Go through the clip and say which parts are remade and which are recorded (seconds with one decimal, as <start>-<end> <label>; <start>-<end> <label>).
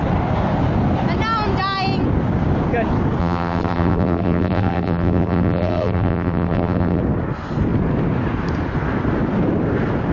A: 0.0-3.2 recorded; 3.2-7.0 remade; 7.0-10.1 recorded